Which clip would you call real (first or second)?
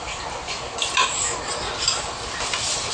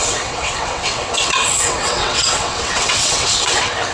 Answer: first